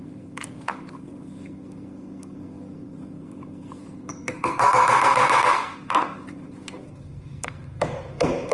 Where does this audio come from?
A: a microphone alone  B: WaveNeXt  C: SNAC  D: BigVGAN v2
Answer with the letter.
C